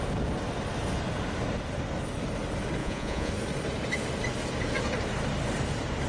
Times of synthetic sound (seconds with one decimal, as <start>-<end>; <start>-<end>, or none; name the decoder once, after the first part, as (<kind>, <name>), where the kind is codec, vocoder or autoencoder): 2.8-3.3 (vocoder, Vocos)